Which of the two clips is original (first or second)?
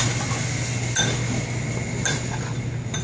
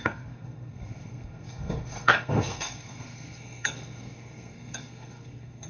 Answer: first